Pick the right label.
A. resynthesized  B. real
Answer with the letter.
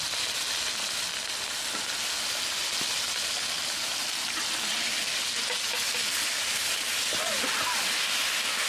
B